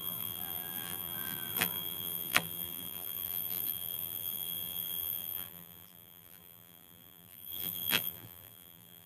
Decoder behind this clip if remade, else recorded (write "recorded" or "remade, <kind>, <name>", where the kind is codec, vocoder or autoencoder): remade, vocoder, BigVGAN v2